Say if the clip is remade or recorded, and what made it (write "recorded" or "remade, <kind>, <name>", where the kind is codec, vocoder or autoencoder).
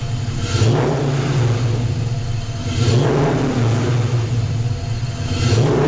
recorded